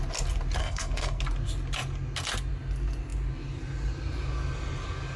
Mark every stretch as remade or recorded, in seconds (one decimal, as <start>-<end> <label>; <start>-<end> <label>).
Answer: 0.0-0.6 recorded; 0.6-1.2 remade; 1.2-5.2 recorded